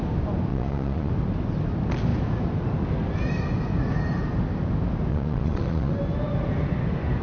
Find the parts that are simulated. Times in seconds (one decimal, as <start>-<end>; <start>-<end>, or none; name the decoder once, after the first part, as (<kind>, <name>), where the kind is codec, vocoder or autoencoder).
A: 0.5-1.1 (vocoder, Vocos); 5.1-5.9